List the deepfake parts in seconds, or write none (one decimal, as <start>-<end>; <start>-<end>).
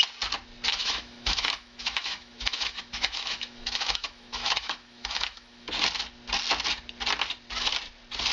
0.7-5.7